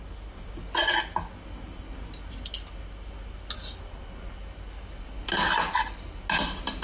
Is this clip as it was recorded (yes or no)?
yes